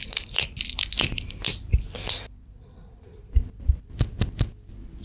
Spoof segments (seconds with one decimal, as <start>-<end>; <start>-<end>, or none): 1.5-4.0